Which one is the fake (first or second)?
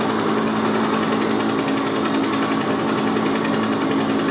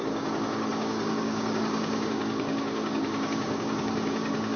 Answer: second